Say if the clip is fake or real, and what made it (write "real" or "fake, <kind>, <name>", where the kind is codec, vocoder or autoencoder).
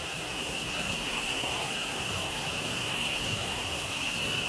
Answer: fake, codec, SNAC